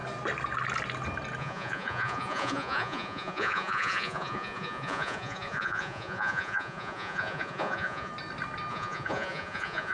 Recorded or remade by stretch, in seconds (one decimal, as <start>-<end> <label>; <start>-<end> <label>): 0.0-1.4 recorded; 1.4-8.1 remade; 8.1-8.7 recorded; 8.7-9.9 remade